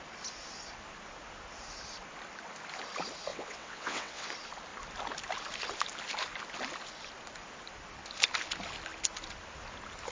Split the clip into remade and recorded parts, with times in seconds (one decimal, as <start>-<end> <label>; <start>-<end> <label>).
0.0-3.3 recorded; 3.3-4.3 remade; 4.3-10.1 recorded